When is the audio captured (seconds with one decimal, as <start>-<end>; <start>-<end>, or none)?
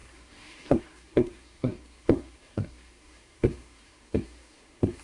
none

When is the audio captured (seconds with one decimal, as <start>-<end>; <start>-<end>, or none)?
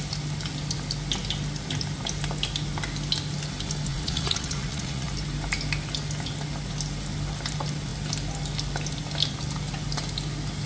0.0-3.9; 5.1-10.7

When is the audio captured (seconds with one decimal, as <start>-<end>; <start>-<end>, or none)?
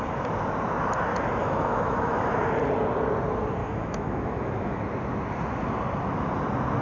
0.0-1.4; 2.3-3.6; 4.8-6.8